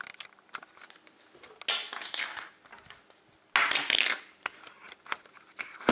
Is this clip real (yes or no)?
yes